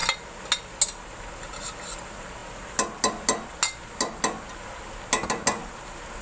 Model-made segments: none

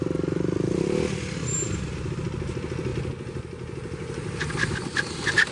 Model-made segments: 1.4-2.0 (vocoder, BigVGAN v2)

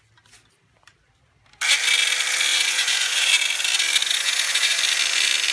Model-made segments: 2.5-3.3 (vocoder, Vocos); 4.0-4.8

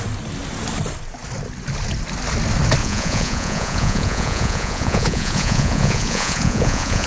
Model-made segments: 2.8-7.1 (vocoder, Vocos)

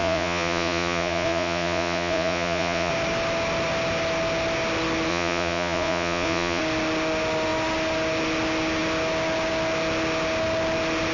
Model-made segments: 0.0-2.9 (vocoder, Vocos); 5.1-6.6